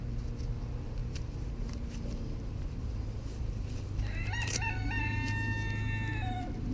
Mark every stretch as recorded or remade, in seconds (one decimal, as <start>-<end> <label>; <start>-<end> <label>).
0.0-1.0 recorded; 1.0-5.0 remade; 5.0-6.7 recorded